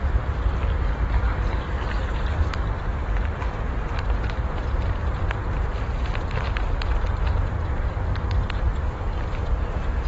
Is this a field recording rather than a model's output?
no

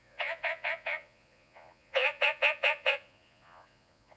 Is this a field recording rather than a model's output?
no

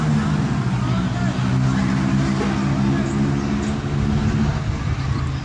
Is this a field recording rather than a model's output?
yes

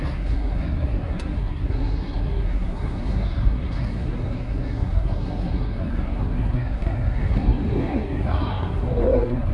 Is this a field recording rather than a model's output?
no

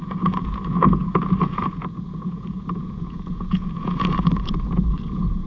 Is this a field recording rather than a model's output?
no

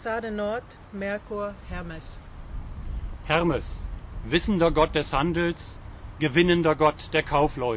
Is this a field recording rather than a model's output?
yes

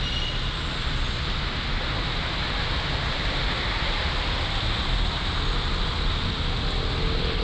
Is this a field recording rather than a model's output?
yes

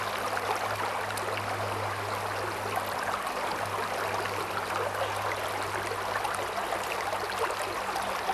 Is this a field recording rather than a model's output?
yes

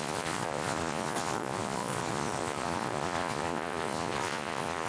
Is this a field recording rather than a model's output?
no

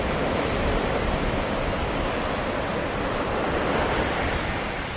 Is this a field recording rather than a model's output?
no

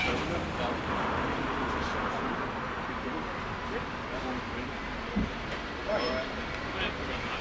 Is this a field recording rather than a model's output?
yes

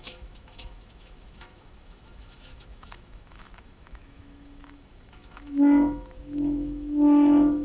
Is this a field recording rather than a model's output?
no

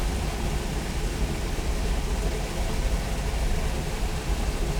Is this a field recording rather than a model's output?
yes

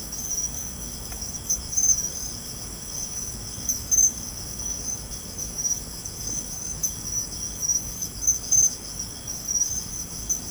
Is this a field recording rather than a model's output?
no